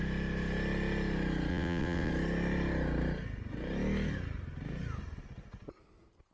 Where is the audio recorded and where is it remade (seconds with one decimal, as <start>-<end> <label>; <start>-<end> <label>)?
0.0-1.5 recorded; 1.5-2.1 remade; 2.1-6.3 recorded